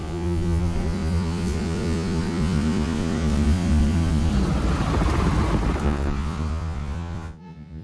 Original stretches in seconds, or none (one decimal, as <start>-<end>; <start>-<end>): 4.3-5.8